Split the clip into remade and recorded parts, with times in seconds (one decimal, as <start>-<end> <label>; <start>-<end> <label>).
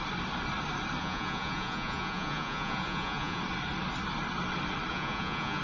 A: 0.0-1.0 recorded; 1.0-3.4 remade; 3.4-4.9 recorded; 4.9-5.6 remade